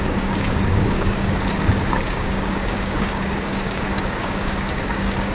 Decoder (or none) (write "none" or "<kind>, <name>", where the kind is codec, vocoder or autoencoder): codec, DAC